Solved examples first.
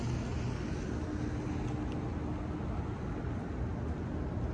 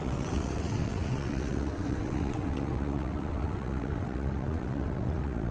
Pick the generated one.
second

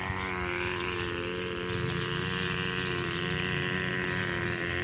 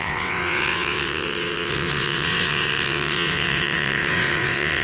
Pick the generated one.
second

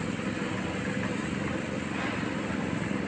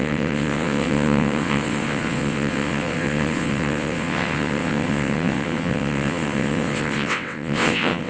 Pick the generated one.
second